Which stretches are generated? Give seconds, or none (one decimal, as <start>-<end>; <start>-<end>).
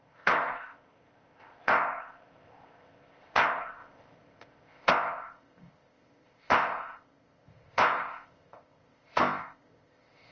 0.0-10.3